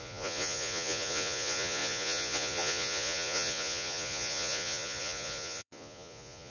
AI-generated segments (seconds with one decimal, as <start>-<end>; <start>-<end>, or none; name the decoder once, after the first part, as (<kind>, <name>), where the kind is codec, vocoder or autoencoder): 0.0-6.5 (vocoder, Vocos)